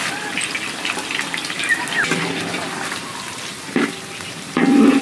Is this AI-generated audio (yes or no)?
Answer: yes